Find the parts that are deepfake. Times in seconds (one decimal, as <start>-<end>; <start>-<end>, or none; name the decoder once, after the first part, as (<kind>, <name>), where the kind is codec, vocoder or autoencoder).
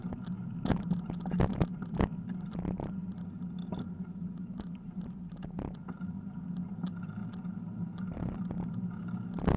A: none